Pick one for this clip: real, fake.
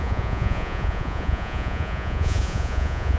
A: fake